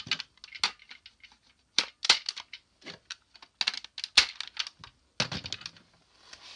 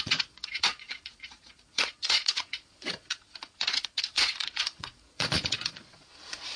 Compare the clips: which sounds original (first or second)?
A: first